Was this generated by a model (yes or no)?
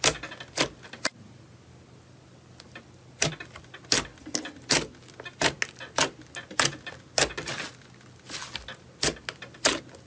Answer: no